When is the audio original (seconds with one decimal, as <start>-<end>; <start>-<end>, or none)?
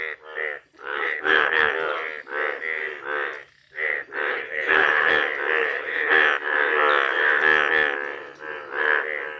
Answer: 0.0-0.8; 1.7-4.3; 5.1-5.6; 6.1-9.4